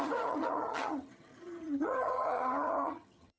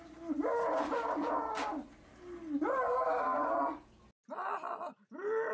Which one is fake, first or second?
first